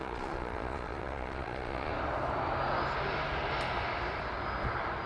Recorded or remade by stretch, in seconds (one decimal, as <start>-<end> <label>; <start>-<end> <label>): 0.0-1.9 remade; 1.9-5.1 recorded